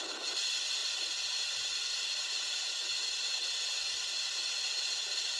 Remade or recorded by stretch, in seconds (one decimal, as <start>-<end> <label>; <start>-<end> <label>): 0.0-5.4 recorded